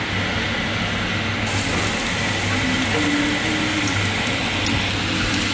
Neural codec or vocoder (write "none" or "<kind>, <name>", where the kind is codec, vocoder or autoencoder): none